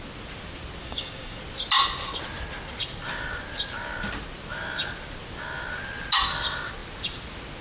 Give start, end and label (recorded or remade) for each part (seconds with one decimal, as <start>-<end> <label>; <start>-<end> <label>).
0.0-0.8 recorded; 0.8-1.4 remade; 1.4-7.6 recorded